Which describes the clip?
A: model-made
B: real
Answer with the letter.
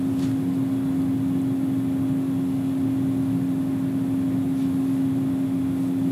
B